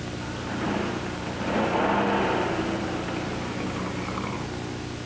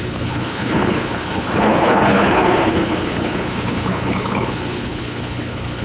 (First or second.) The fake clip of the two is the second